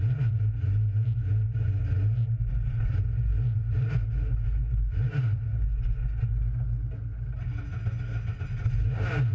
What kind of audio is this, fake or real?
real